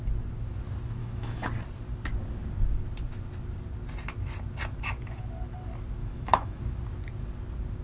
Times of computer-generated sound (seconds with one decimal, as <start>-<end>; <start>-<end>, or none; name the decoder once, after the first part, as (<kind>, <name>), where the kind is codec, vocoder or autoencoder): 1.0-1.5 (autoencoder, DAC-VAE); 6.0-6.6